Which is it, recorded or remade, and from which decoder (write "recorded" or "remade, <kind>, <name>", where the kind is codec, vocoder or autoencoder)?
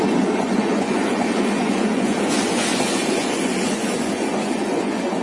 remade, vocoder, Vocos